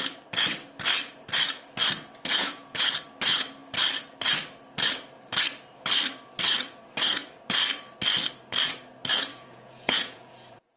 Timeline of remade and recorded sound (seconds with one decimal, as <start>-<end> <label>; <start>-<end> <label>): 0.0-2.3 recorded; 2.3-2.9 remade; 2.9-9.3 recorded; 9.3-10.8 remade